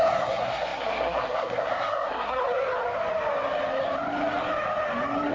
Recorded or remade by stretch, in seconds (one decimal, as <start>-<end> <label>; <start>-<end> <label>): 0.0-2.4 remade; 2.4-5.3 recorded